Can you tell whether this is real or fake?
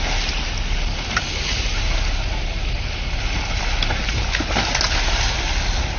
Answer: real